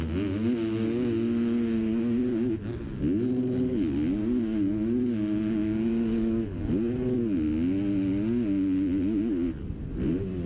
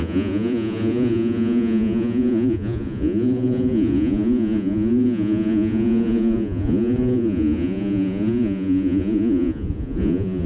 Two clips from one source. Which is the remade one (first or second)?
second